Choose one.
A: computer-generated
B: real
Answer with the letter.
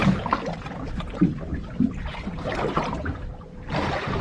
B